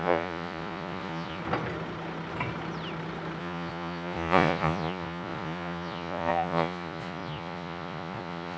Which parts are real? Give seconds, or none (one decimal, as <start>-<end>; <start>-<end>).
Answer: 1.4-3.4